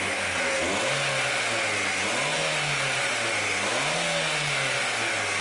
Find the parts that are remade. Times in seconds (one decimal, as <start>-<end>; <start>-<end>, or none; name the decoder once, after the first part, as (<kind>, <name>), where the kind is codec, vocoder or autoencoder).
none